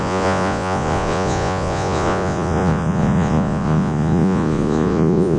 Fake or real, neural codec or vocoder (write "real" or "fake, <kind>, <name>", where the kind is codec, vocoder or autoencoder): fake, vocoder, Vocos